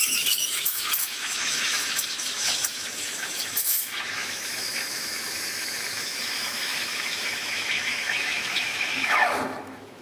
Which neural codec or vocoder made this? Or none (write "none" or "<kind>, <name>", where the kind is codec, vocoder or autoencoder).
autoencoder, DAC-VAE